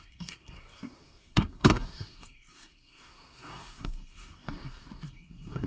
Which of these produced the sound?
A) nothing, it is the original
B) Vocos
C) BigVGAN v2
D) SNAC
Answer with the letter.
D